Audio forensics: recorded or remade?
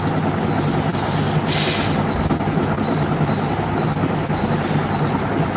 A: recorded